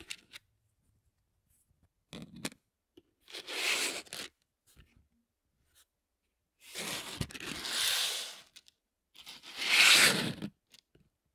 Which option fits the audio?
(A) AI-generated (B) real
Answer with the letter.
B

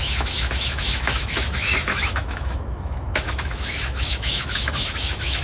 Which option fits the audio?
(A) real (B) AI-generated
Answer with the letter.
B